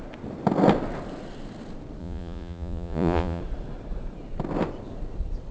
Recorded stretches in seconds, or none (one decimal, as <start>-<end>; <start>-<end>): 0.0-2.0; 3.4-5.5

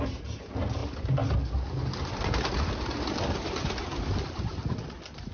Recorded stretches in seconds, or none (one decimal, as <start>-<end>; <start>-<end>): 0.0-5.3

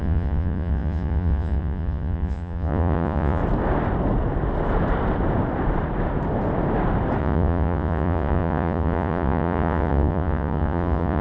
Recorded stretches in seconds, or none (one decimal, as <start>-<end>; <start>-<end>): 3.4-7.2

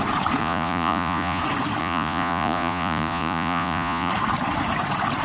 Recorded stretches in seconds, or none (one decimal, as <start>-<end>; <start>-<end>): 0.0-0.4; 1.4-1.8; 4.1-5.2

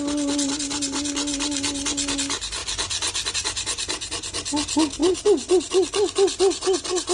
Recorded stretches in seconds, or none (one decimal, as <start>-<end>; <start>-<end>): 0.0-7.1

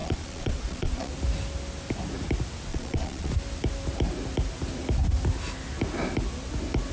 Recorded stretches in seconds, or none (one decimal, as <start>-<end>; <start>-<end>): 1.1-2.7; 3.3-6.9

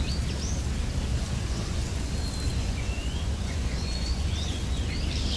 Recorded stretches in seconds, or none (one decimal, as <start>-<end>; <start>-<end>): 0.0-1.1; 2.1-2.5; 4.9-5.4

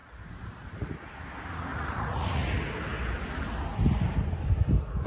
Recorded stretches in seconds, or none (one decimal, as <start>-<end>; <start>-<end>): 1.0-1.7; 2.5-5.1